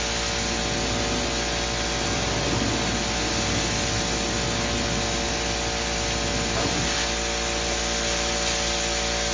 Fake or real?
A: real